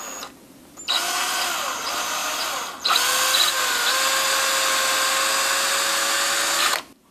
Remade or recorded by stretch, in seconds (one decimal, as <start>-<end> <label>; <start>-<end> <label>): 0.0-7.1 recorded